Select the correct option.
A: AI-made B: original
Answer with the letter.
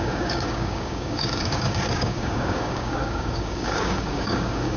A